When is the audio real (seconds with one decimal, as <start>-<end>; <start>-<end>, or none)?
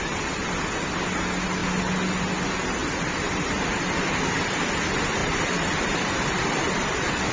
0.0-2.8; 4.6-5.2